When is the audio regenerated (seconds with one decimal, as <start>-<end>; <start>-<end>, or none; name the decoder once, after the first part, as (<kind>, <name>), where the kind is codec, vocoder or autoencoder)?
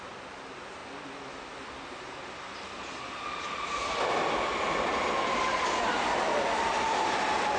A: none